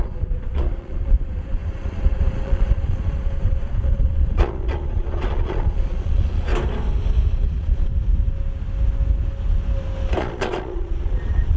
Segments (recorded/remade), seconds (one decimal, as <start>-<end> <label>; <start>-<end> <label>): 0.0-6.5 remade; 6.5-7.3 recorded; 7.3-7.9 remade; 7.9-10.2 recorded; 10.2-11.6 remade